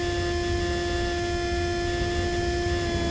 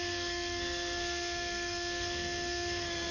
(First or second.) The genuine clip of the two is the first